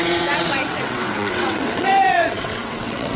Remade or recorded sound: remade